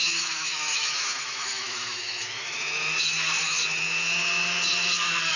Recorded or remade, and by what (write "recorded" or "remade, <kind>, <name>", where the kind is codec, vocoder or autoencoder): remade, autoencoder, DAC-VAE